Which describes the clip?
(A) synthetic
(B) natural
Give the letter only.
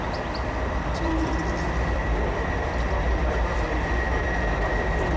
A